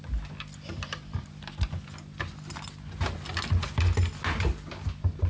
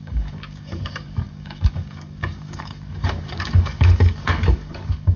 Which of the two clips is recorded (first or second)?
first